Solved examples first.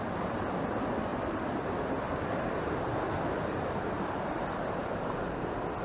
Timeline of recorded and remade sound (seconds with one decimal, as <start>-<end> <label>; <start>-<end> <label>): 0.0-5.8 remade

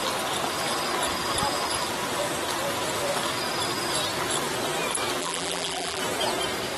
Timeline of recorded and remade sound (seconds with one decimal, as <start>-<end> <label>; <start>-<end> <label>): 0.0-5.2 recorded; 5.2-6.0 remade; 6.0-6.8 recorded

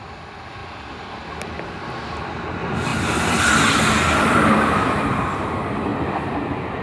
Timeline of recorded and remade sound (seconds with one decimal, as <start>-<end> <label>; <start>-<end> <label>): 0.0-6.8 recorded

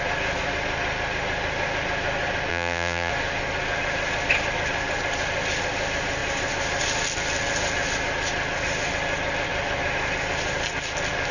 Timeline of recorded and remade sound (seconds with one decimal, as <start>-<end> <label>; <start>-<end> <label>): 0.0-2.5 recorded; 2.5-3.1 remade; 3.1-11.3 recorded

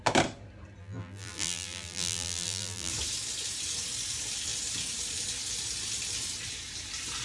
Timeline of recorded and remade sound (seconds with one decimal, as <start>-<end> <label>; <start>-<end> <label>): 0.0-0.8 recorded; 0.8-2.9 remade; 2.9-7.2 recorded

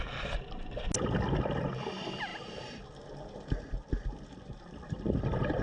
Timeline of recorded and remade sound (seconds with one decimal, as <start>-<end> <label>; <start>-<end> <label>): 0.0-5.6 recorded

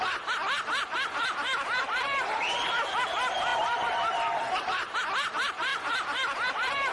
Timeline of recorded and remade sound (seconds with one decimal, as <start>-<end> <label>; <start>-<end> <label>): 0.0-3.5 recorded; 3.5-4.6 remade; 4.6-6.9 recorded

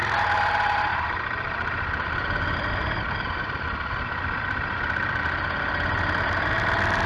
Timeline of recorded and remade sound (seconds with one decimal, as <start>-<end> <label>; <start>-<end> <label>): 0.0-0.9 recorded; 0.9-5.2 remade; 5.2-7.1 recorded